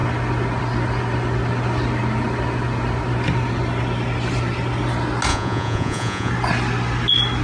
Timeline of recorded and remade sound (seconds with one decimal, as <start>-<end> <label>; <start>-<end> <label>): 0.0-5.3 recorded; 5.3-6.3 remade; 6.3-7.4 recorded